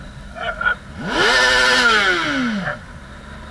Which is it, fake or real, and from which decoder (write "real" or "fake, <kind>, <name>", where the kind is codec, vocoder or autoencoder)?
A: real